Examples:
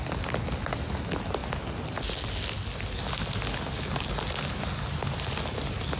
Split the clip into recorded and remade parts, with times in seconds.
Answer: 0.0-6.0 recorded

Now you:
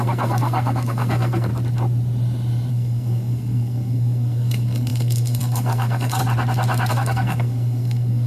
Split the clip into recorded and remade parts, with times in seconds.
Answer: 0.0-1.5 remade; 1.5-2.7 recorded; 2.7-6.2 remade; 6.2-6.9 recorded; 6.9-8.3 remade

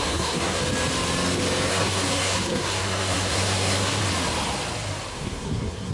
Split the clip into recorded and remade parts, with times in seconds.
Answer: 0.0-0.6 remade; 0.6-1.7 recorded; 1.7-4.0 remade; 4.0-5.1 recorded; 5.1-5.9 remade

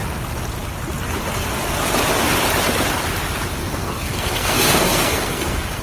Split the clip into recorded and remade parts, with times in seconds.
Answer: 0.0-3.6 recorded; 3.6-5.8 remade

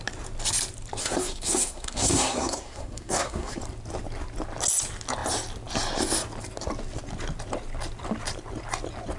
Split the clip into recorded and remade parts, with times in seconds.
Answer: 0.0-1.0 recorded; 1.0-3.6 remade; 3.6-9.2 recorded

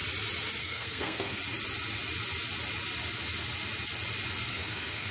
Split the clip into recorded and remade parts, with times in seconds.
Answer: 0.0-0.6 recorded; 0.6-1.4 remade; 1.4-4.5 recorded; 4.5-5.1 remade

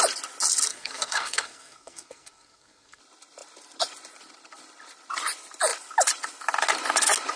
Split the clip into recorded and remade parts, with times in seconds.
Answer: 0.0-0.7 recorded; 0.7-3.0 remade; 3.0-7.4 recorded